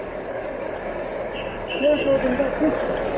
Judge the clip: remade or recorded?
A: remade